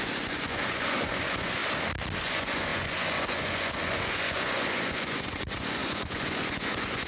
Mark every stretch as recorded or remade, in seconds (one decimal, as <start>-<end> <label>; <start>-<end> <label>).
0.0-1.6 remade; 1.6-2.2 recorded; 2.2-7.1 remade